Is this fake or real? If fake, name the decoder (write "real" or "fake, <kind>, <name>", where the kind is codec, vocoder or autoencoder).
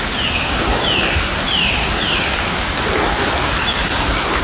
real